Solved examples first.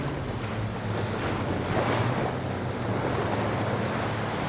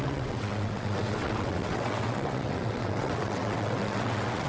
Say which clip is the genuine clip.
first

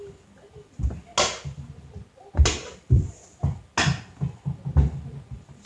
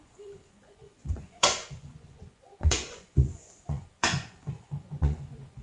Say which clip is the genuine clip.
first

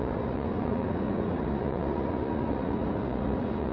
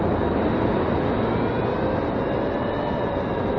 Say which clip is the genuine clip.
second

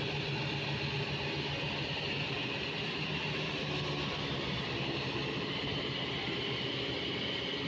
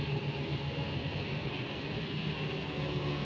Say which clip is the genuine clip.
first